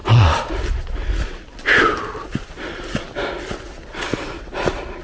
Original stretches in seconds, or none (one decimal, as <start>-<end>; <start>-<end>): 0.0-5.0